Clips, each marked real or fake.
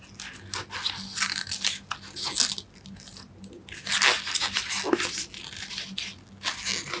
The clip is real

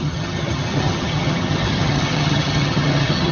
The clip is fake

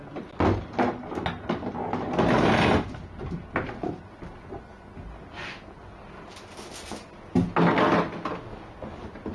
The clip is real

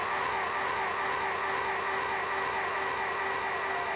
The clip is real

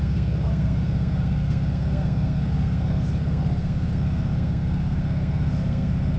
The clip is fake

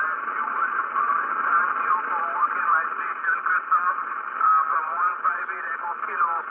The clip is real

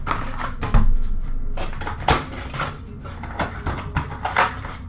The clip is real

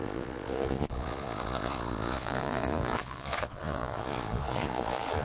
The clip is fake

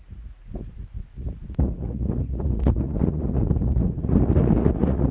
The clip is fake